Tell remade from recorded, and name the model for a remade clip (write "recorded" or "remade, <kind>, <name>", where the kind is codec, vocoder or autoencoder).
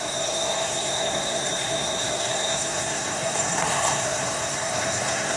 remade, codec, SNAC